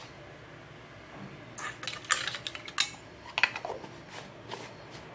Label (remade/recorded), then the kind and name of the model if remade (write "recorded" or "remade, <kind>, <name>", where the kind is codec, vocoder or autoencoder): recorded